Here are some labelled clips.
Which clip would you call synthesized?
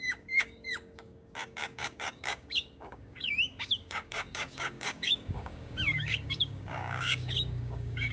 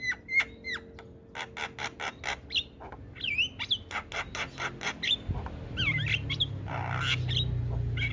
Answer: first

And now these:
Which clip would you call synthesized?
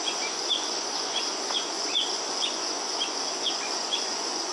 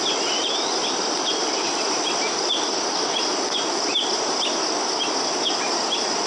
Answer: first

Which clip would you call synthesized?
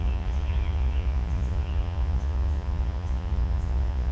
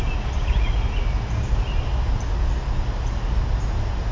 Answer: first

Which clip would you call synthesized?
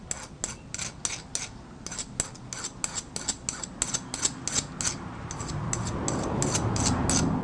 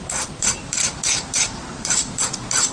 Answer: second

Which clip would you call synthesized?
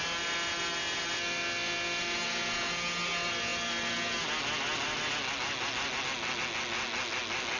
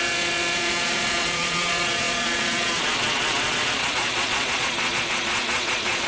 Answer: second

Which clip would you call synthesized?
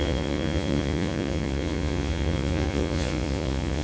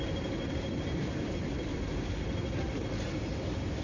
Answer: first